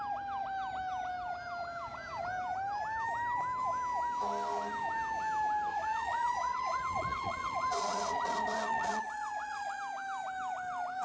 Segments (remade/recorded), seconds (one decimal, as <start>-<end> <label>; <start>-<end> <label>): 0.0-5.7 recorded; 5.7-9.8 remade; 9.8-11.0 recorded